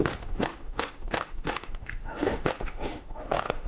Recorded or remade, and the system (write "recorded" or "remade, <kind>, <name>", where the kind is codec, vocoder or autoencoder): remade, autoencoder, DAC-VAE